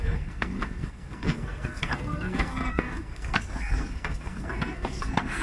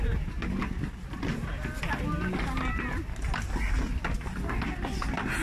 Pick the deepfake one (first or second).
first